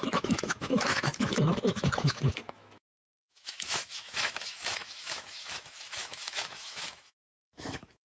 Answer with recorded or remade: remade